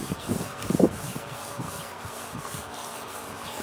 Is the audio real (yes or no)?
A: no